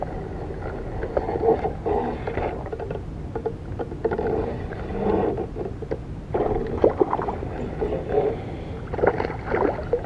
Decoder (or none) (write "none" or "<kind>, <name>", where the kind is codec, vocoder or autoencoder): none